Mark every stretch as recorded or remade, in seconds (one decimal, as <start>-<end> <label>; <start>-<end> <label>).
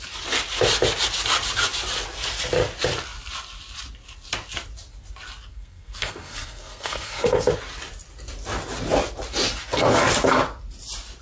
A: 0.0-5.5 recorded; 5.5-7.5 remade; 7.5-11.2 recorded